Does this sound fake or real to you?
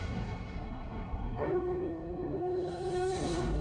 fake